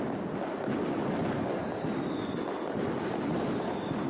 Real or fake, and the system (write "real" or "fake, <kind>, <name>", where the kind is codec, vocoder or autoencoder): real